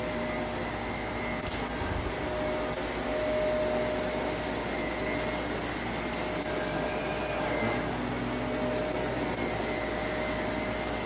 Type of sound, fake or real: real